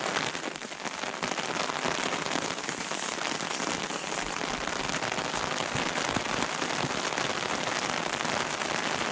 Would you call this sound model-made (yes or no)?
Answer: no